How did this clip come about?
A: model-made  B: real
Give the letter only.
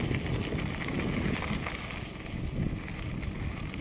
B